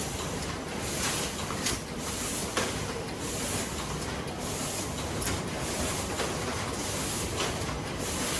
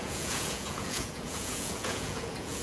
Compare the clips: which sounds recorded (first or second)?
first